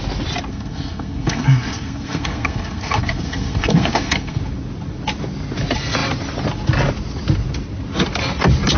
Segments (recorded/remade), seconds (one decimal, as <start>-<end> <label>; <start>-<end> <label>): 0.0-0.5 recorded; 0.5-4.4 remade; 4.4-8.8 recorded